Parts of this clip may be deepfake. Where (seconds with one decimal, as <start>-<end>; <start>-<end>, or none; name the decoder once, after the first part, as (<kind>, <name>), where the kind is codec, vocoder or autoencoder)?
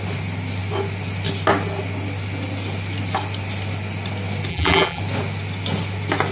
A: 4.5-5.0 (vocoder, BigVGAN v2)